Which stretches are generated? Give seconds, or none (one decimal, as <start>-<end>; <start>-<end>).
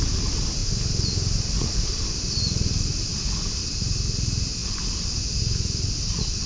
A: none